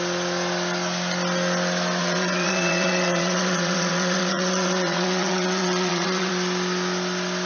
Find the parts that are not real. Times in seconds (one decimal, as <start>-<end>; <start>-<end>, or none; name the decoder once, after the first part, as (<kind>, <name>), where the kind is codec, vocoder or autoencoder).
2.0-6.3 (vocoder, WaveNeXt)